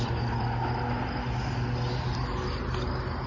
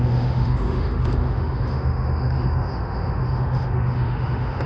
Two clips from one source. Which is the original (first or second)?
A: first